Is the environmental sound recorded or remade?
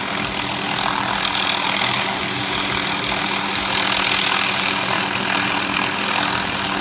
recorded